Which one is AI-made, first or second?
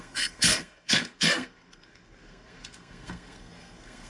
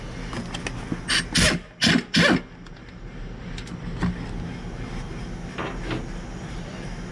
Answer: first